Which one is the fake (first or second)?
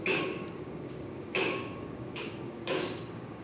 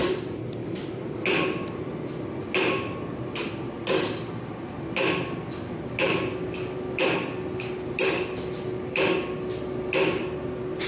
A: first